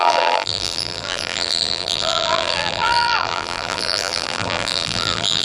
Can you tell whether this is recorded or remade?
remade